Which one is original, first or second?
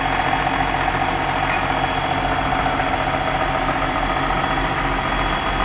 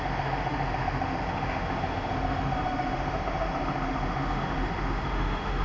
first